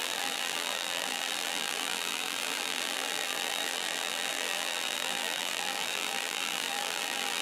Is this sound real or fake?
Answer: fake